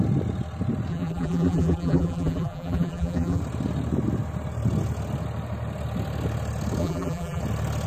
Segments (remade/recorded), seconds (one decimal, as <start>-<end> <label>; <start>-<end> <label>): 0.0-0.9 recorded; 0.9-3.4 remade; 3.4-6.8 recorded; 6.8-7.4 remade; 7.4-7.9 recorded